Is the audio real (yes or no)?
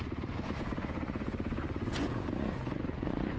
no